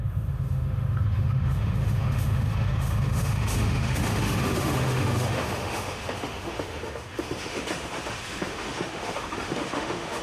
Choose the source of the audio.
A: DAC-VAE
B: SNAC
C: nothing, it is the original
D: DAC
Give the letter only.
A